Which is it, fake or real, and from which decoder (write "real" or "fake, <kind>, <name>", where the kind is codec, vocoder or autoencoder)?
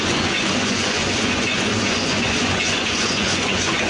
fake, vocoder, Vocos